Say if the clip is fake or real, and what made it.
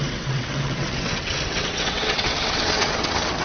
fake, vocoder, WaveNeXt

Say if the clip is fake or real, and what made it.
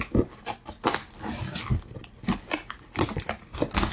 real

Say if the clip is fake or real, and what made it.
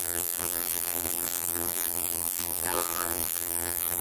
fake, vocoder, BigVGAN v2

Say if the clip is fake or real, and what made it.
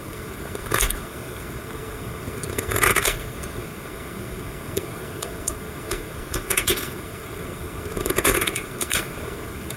fake, codec, SNAC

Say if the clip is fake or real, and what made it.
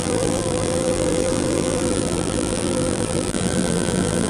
fake, vocoder, BigVGAN v2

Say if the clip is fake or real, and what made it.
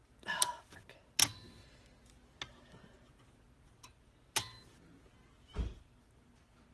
real